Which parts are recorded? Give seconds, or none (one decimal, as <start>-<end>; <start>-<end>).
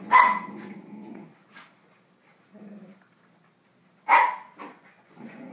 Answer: 1.4-4.7